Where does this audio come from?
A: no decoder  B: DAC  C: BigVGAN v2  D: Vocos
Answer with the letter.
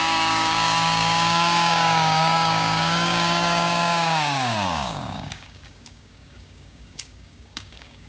B